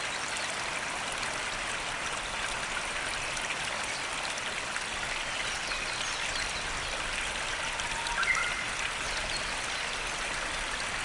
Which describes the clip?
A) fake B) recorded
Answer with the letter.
B